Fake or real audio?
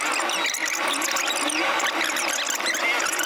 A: real